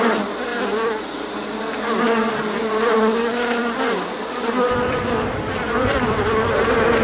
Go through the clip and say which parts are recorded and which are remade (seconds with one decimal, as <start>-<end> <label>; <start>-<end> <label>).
0.0-7.0 remade